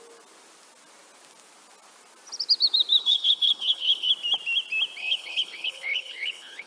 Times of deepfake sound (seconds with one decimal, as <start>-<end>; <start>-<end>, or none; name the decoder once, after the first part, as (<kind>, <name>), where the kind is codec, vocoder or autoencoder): 3.0-4.1 (codec, HILCodec); 5.0-6.7